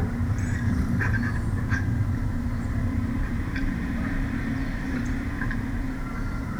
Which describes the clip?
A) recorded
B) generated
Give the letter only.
B